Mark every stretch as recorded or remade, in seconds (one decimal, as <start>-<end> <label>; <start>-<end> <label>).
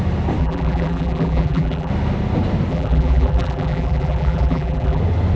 0.0-0.4 recorded; 0.4-1.9 remade; 1.9-2.7 recorded; 2.7-5.0 remade; 5.0-5.4 recorded